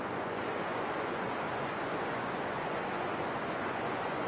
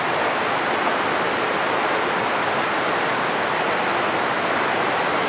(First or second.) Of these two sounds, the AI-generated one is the first